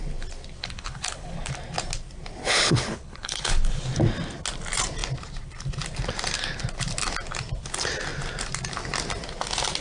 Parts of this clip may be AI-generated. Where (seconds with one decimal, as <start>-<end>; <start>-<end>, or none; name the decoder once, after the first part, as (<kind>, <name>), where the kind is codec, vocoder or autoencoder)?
0.6-1.5 (codec, HILCodec); 2.4-3.8